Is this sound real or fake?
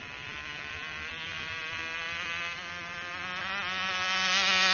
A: real